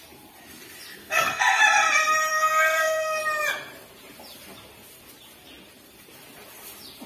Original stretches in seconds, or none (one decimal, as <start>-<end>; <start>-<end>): 0.0-1.0; 1.6-2.3; 3.2-7.1